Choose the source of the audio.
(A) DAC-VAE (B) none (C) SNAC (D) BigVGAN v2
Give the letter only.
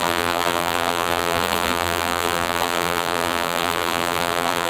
D